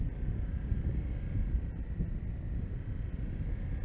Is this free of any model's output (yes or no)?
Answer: yes